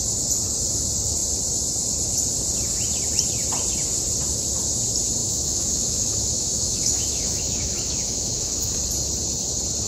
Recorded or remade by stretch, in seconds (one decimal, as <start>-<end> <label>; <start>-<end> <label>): 0.0-5.2 recorded; 5.2-8.7 remade; 8.7-9.9 recorded